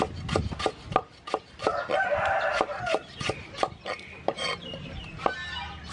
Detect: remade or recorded recorded